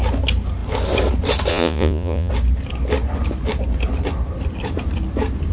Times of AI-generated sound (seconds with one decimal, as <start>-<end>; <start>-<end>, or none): 1.5-2.3